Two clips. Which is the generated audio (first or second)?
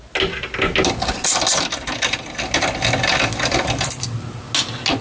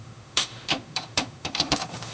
second